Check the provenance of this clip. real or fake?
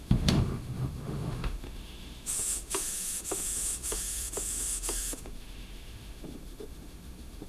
fake